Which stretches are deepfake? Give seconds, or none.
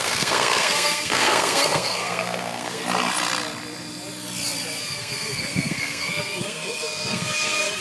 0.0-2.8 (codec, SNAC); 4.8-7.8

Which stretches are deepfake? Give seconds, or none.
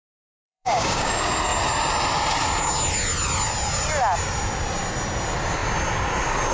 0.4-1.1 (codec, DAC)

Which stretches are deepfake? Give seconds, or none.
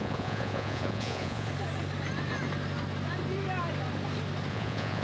0.0-1.5 (vocoder, Vocos); 4.5-5.0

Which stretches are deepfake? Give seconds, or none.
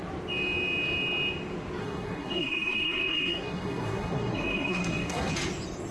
1.8-5.3 (codec, SNAC)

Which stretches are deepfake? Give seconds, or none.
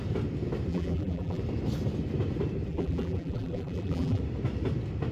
0.7-1.4 (vocoder, BigVGAN v2); 2.7-4.2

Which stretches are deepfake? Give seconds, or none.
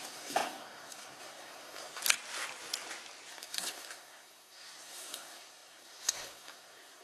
0.0-2.0 (codec, SNAC); 3.3-7.0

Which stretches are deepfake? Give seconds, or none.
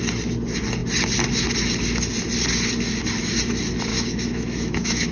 3.9-5.1 (autoencoder, DAC-VAE)